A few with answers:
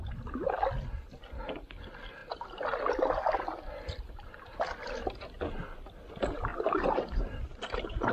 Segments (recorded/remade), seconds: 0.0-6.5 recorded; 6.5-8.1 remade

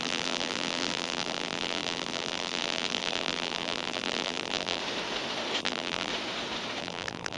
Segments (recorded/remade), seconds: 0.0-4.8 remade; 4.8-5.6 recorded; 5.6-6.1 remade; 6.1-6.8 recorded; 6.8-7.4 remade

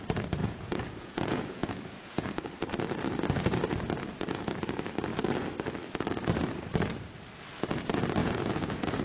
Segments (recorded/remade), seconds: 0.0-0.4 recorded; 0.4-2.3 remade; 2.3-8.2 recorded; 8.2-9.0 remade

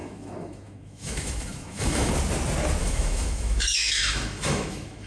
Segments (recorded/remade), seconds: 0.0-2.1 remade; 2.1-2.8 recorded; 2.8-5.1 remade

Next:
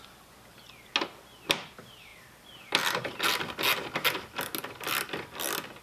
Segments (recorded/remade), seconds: 0.0-5.8 recorded

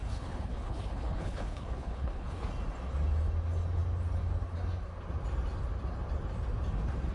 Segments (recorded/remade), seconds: 0.0-2.5 remade; 2.5-7.1 recorded

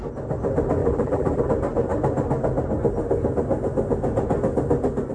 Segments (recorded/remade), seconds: 0.0-0.8 recorded; 0.8-1.4 remade; 1.4-5.1 recorded